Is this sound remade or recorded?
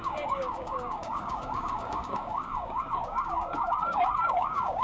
remade